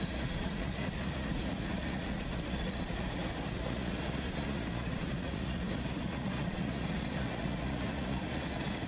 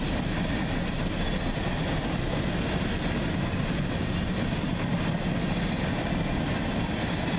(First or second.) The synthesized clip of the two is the first